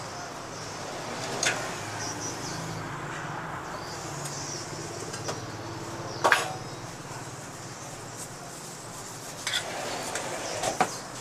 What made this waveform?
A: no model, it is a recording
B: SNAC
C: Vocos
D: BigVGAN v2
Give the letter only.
A